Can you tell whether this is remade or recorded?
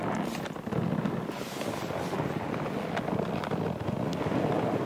recorded